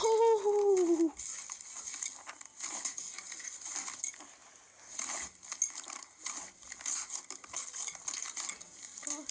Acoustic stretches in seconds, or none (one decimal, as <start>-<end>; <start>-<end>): 0.0-9.3